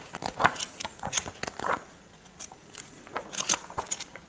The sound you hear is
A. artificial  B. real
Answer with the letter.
A